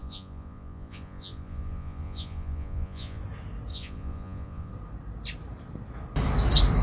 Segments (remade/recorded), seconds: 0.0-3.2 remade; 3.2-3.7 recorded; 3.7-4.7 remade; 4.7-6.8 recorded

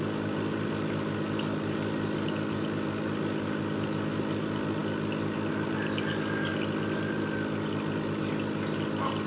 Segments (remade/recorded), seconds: 0.0-9.3 recorded

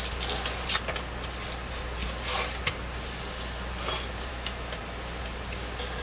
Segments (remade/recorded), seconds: 0.0-4.3 recorded; 4.3-4.8 remade; 4.8-6.0 recorded

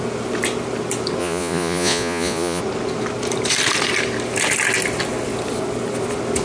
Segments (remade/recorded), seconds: 0.0-1.2 recorded; 1.2-2.6 remade; 2.6-6.4 recorded

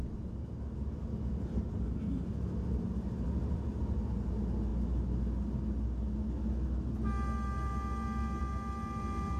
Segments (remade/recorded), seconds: 0.0-9.4 recorded

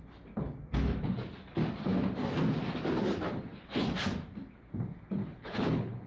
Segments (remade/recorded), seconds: 0.0-5.2 recorded; 5.2-6.1 remade